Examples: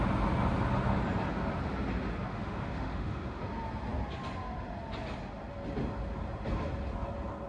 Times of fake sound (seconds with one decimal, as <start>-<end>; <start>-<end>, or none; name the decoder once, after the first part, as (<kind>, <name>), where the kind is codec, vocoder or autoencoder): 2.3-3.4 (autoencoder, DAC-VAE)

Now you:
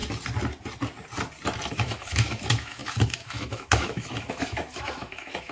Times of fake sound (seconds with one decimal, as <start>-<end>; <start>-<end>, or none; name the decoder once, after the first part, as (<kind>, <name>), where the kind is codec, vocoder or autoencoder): 1.7-5.5 (autoencoder, DAC-VAE)

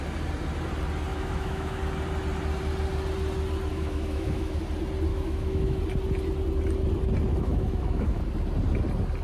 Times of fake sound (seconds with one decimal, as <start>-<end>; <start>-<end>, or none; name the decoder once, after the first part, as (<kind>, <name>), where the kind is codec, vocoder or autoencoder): 1.1-1.8 (autoencoder, DAC-VAE); 3.7-4.6; 5.1-5.8; 7.3-8.2

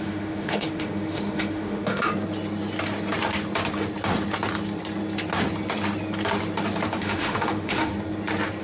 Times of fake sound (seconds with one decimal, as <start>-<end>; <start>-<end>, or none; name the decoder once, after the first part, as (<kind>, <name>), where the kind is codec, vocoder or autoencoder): 0.0-2.1 (autoencoder, DAC-VAE); 7.0-7.9

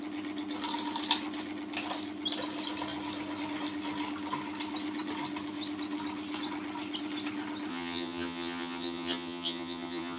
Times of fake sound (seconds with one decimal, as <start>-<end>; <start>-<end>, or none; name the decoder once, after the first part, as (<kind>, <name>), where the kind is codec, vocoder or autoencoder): 7.7-10.2 (vocoder, HiFi-GAN)

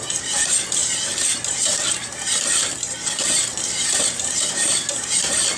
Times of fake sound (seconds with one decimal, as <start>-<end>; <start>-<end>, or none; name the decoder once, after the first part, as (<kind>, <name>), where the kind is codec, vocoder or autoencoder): 0.0-5.6 (vocoder, BigVGAN v2)

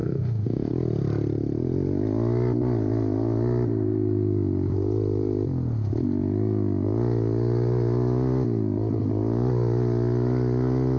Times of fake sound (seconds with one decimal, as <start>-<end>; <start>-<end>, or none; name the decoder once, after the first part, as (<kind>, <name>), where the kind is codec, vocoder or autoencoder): 0.0-0.7 (autoencoder, DAC-VAE)